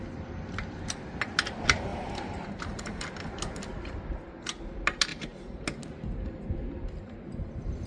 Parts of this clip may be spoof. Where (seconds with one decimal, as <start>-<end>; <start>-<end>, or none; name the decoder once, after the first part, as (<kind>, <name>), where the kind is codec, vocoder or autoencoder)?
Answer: 1.9-3.1 (vocoder, BigVGAN v2); 5.1-5.6